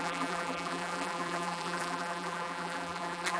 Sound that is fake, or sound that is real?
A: fake